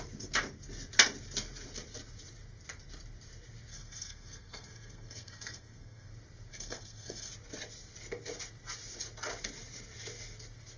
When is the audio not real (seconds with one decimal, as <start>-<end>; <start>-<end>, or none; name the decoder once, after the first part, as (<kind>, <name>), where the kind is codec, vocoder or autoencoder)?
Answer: 3.7-6.1 (codec, SNAC); 6.5-7.3